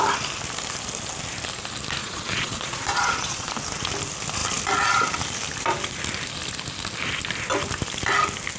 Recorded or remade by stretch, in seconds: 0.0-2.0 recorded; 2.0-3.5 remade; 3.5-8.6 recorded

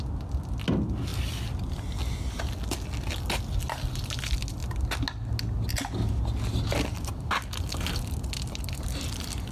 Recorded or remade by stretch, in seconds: 0.0-9.5 recorded

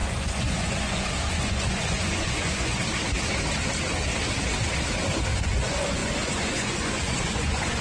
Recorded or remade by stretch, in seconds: 0.0-2.8 remade; 2.8-5.4 recorded; 5.4-7.8 remade

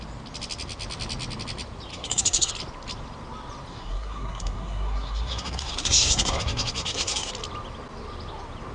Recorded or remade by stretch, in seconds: 0.0-1.9 recorded; 1.9-2.5 remade; 2.5-3.7 recorded; 3.7-7.3 remade; 7.3-8.7 recorded

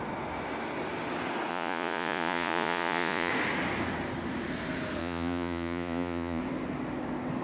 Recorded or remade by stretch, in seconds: 0.0-1.5 recorded; 1.5-3.3 remade; 3.3-5.0 recorded; 5.0-6.4 remade; 6.4-7.4 recorded

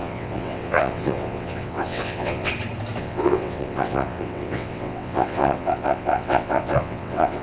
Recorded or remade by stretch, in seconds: 0.0-2.5 remade; 2.5-3.0 recorded; 3.0-7.4 remade

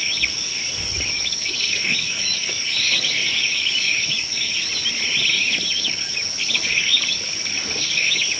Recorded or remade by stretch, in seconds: 0.0-4.5 remade; 4.5-5.3 recorded; 5.3-8.4 remade